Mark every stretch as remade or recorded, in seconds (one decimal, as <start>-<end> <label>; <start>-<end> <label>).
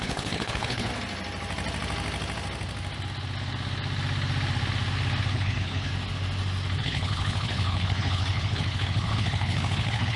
0.0-0.9 remade; 0.9-5.3 recorded; 5.3-5.9 remade; 5.9-6.8 recorded; 6.8-10.2 remade